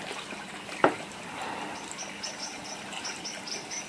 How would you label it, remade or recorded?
recorded